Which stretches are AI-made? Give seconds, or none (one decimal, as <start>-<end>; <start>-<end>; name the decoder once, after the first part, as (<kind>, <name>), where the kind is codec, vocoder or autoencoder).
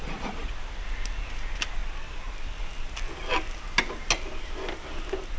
0.0-0.5 (vocoder, Vocos)